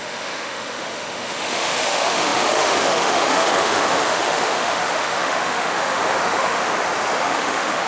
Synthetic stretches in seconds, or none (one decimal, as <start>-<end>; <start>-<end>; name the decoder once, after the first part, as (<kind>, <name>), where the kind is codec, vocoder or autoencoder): 0.0-6.7 (autoencoder, DAC-VAE); 7.2-7.9